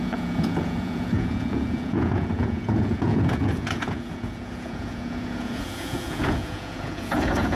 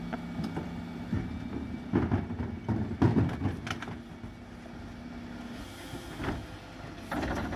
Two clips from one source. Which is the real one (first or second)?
second